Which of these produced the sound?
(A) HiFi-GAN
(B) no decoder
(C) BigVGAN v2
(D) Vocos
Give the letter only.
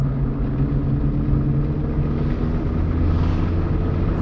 B